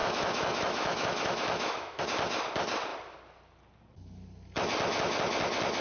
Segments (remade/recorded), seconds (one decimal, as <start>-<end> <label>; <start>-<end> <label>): 0.0-2.0 remade; 2.0-5.8 recorded